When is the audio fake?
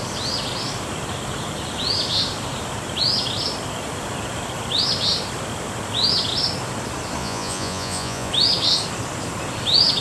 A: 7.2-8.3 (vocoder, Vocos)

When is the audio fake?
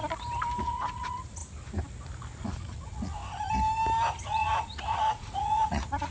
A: 0.6-1.4 (vocoder, Vocos); 2.6-3.2; 4.2-6.1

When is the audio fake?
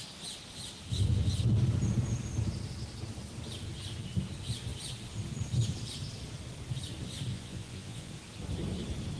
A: 7.3-8.1 (vocoder, Vocos)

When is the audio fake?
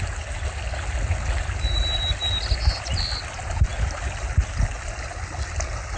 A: none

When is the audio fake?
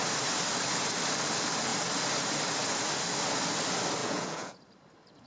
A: 4.0-4.6 (vocoder, Vocos)